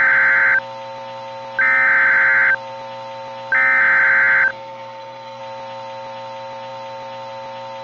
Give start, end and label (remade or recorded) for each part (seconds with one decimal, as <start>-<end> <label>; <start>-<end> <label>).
0.0-4.5 recorded; 4.5-5.4 remade; 5.4-7.8 recorded